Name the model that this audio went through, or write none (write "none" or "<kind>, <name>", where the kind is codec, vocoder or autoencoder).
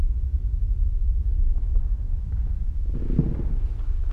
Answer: none